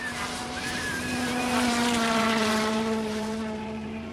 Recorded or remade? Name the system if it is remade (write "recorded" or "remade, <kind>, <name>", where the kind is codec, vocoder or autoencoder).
remade, vocoder, BigVGAN v2